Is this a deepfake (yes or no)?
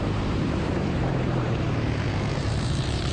yes